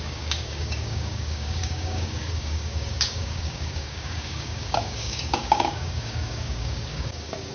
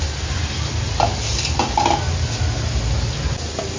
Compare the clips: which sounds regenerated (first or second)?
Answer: first